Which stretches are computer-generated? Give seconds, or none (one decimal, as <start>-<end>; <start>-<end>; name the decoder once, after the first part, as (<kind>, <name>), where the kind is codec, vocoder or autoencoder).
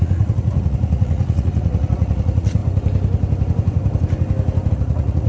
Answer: 0.0-2.6 (vocoder, Vocos); 4.7-5.3